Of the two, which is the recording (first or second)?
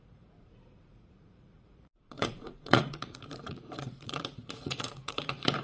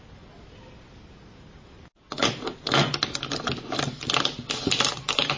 second